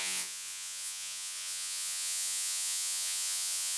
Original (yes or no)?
no